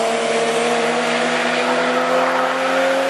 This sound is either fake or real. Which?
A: real